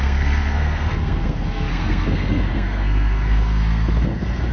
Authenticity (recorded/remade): remade